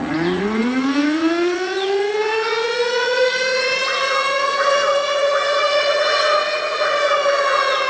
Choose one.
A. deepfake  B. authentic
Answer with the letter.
A